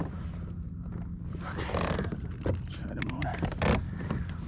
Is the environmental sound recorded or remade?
recorded